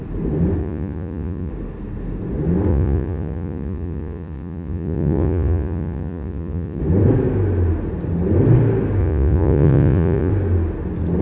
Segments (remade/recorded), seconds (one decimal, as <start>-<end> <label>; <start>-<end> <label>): 0.0-0.6 recorded; 0.6-1.5 remade; 1.5-2.7 recorded; 2.7-6.8 remade; 6.8-9.0 recorded; 9.0-10.3 remade; 10.3-11.2 recorded

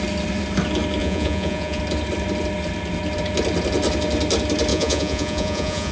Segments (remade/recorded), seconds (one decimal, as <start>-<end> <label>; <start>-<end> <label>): 0.0-1.0 recorded; 1.0-1.8 remade; 1.8-4.7 recorded; 4.7-5.9 remade

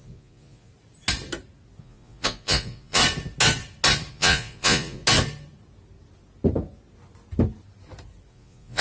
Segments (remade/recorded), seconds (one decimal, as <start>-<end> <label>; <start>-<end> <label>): 0.0-0.7 remade; 0.7-1.8 recorded; 1.8-3.0 remade; 3.0-4.1 recorded; 4.1-5.0 remade; 5.0-8.3 recorded; 8.3-8.8 remade

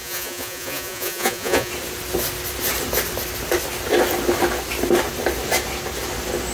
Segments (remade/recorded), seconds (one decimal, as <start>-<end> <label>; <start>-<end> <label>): 0.0-1.7 remade; 1.7-6.5 recorded

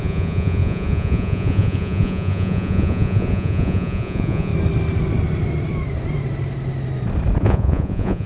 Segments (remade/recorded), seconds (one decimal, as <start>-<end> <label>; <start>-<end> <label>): 0.0-4.5 remade; 4.5-7.4 recorded; 7.4-8.3 remade